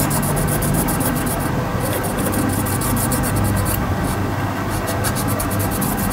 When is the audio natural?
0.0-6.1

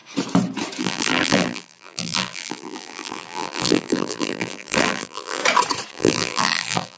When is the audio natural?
0.0-0.8; 5.4-5.9

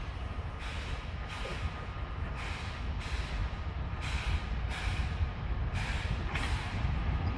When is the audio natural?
0.0-3.4; 5.0-7.4